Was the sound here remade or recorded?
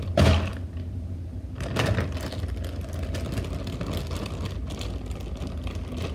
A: recorded